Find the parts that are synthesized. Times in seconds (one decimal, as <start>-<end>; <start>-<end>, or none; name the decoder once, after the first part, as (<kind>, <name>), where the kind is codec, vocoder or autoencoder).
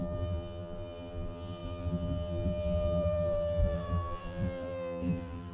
0.0-5.5 (vocoder, BigVGAN v2)